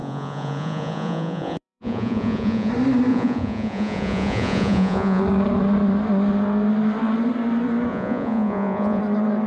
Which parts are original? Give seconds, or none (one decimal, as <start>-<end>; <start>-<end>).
2.7-3.1; 5.2-7.9; 9.0-9.5